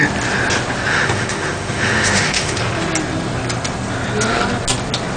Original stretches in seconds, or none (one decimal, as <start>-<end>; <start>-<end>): 0.0-0.9; 2.6-5.2